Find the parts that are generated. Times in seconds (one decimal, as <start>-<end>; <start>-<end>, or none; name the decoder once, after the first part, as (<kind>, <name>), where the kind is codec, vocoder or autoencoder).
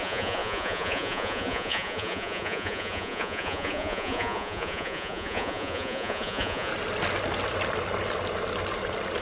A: 0.0-6.7 (vocoder, Vocos)